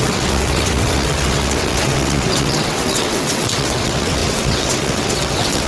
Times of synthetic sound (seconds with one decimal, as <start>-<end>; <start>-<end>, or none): 0.0-5.7